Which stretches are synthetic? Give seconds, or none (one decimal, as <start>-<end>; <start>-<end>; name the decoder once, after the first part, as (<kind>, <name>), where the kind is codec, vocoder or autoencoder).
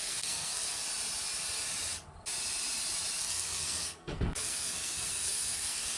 0.0-0.8 (codec, SNAC); 3.2-6.0